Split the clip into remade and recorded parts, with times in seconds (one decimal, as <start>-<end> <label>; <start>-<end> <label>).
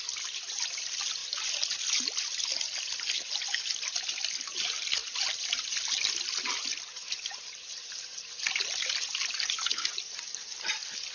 0.0-11.1 recorded